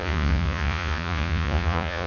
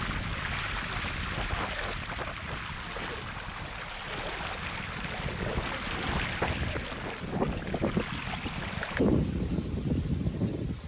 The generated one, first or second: first